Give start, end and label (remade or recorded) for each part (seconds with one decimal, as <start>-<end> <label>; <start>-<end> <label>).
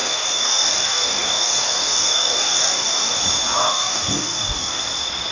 0.0-3.2 remade; 3.2-3.6 recorded; 3.6-4.8 remade; 4.8-5.3 recorded